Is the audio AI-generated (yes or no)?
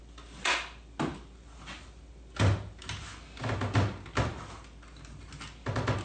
no